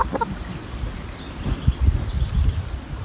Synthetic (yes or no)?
no